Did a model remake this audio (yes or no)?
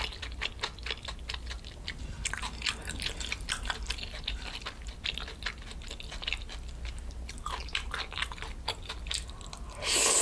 no